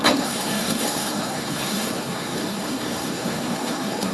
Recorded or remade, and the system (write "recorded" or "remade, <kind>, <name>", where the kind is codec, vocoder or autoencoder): remade, codec, SNAC